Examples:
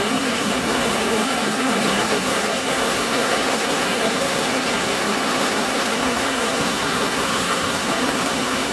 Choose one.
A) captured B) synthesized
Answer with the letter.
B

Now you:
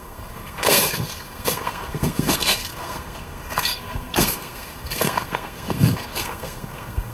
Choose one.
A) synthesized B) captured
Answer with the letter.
A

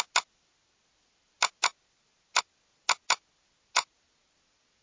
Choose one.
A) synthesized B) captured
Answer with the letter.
B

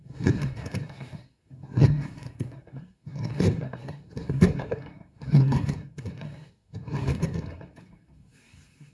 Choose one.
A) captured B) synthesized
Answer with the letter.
B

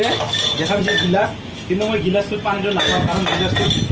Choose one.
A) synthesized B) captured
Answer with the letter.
B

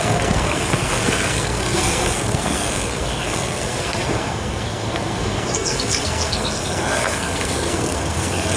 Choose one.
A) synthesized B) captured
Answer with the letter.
A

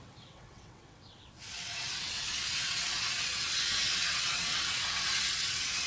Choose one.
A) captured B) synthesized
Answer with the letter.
B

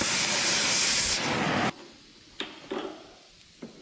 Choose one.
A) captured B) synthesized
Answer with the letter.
A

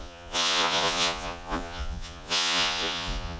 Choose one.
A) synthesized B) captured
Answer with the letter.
A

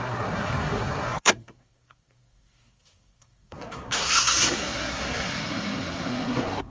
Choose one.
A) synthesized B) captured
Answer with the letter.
A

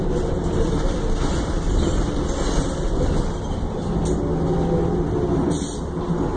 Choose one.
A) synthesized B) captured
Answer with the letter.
B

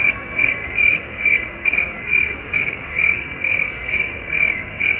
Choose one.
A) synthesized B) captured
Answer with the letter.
A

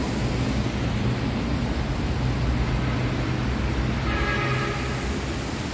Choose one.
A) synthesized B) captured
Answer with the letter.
B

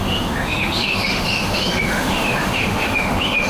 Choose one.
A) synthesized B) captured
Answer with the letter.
A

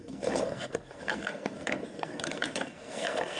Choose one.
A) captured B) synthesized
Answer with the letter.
B